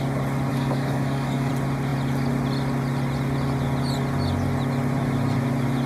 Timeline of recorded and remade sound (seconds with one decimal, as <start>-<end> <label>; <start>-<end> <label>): 0.0-0.5 recorded; 0.5-1.5 remade; 1.5-5.9 recorded